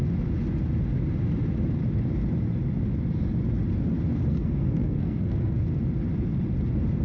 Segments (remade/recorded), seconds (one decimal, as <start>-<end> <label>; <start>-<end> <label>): 0.0-4.3 recorded; 4.3-5.6 remade; 5.6-7.0 recorded